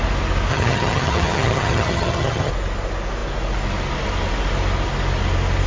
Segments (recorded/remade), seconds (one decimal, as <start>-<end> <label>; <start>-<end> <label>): 0.0-0.5 recorded; 0.5-2.5 remade; 2.5-5.7 recorded